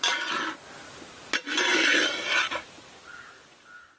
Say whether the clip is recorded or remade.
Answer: recorded